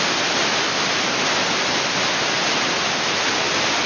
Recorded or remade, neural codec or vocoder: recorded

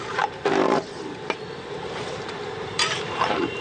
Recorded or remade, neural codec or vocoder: remade, vocoder, BigVGAN v2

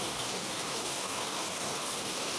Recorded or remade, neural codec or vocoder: remade, codec, DAC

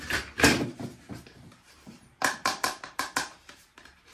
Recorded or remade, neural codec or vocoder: remade, vocoder, BigVGAN v2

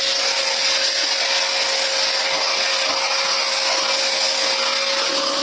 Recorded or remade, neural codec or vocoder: recorded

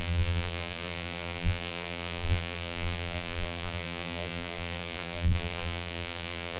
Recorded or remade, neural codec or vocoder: remade, vocoder, BigVGAN v2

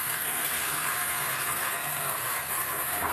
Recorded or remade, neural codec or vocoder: remade, codec, SNAC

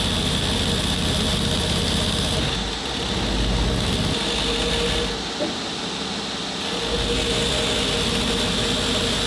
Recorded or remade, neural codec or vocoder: recorded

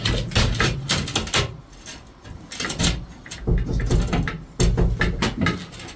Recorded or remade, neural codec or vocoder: recorded